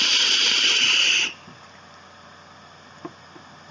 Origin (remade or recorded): recorded